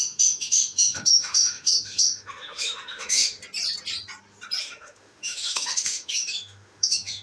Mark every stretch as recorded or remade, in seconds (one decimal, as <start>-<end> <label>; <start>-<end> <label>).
0.0-3.4 remade; 3.4-4.6 recorded; 4.6-7.2 remade